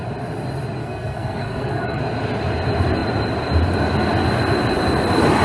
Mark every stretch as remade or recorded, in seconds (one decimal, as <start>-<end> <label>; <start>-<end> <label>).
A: 0.0-0.8 recorded; 0.8-2.0 remade; 2.0-5.4 recorded